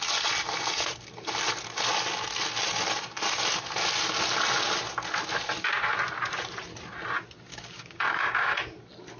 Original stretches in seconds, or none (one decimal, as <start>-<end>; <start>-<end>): 0.0-7.5; 8.5-9.2